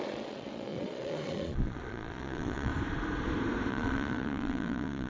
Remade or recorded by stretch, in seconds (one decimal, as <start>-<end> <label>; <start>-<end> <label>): 0.0-2.7 remade; 2.7-3.7 recorded; 3.7-5.1 remade